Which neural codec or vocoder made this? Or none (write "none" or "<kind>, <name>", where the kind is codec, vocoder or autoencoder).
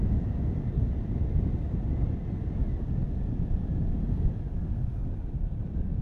none